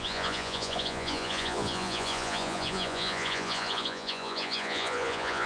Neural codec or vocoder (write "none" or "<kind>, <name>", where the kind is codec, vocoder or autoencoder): vocoder, Vocos